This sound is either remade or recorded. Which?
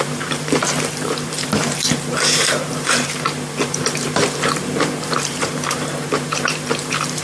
remade